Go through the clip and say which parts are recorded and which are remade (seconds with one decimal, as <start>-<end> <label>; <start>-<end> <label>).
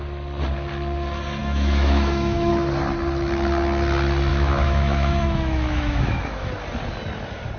0.0-1.4 recorded; 1.4-2.5 remade; 2.5-4.3 recorded; 4.3-6.5 remade; 6.5-7.6 recorded